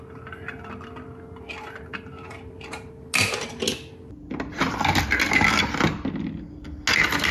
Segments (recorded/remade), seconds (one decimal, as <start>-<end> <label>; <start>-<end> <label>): 0.0-7.3 recorded